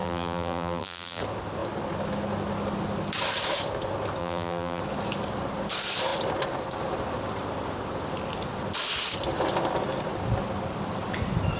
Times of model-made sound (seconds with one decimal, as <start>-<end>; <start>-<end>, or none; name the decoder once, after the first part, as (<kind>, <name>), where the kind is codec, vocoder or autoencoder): 0.0-1.2 (vocoder, BigVGAN v2); 4.2-4.8